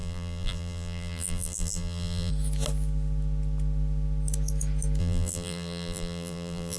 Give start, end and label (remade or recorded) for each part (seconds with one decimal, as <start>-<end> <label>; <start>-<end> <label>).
0.0-2.3 remade; 2.3-5.0 recorded; 5.0-6.8 remade